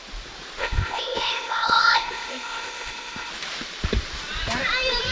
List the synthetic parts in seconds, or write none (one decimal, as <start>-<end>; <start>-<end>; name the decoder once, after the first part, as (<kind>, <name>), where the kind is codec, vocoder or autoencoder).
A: 0.6-3.3 (codec, ZipCodec)